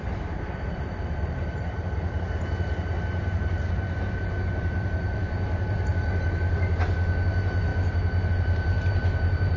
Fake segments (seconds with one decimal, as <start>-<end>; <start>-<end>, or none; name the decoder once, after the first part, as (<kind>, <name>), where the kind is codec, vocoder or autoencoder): 0.0-7.7 (vocoder, BigVGAN v2); 8.3-9.6